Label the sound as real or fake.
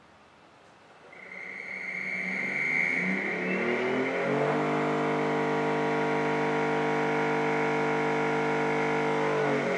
real